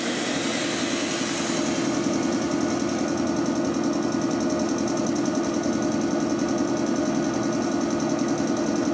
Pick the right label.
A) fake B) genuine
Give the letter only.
B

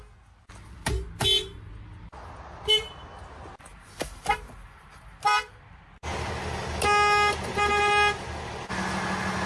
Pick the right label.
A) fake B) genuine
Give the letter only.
B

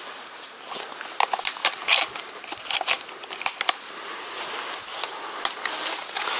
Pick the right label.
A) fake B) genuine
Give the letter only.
B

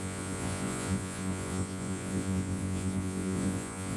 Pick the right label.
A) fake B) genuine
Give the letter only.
A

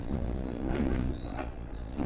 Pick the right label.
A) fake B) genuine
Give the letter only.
A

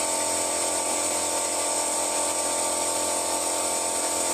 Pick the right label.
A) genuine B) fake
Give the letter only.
A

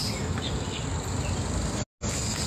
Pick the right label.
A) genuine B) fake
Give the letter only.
A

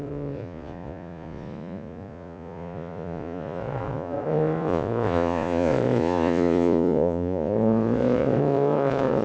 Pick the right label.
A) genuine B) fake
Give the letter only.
B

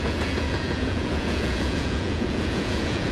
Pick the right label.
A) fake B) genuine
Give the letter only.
A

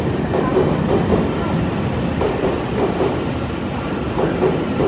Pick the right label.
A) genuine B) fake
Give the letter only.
A